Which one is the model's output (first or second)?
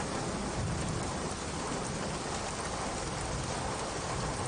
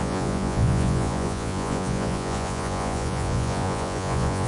second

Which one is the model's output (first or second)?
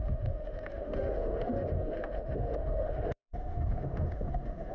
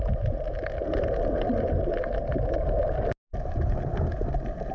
first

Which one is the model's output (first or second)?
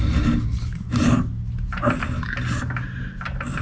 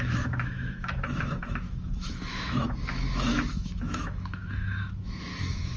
second